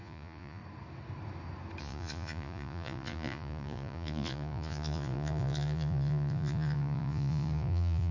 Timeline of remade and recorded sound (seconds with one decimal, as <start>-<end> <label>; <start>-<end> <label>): 0.0-0.6 remade; 0.6-1.8 recorded; 1.8-8.1 remade